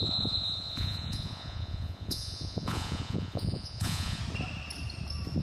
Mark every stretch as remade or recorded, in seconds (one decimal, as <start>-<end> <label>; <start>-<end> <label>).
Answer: 0.0-4.2 remade; 4.2-5.4 recorded